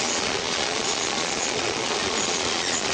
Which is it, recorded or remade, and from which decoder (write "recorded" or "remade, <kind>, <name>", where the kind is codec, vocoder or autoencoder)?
remade, vocoder, Vocos